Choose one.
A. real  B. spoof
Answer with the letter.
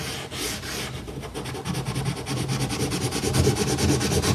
A